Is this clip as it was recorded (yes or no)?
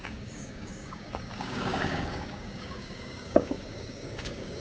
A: no